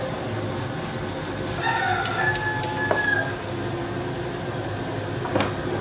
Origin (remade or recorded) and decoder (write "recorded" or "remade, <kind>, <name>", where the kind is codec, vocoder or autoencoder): recorded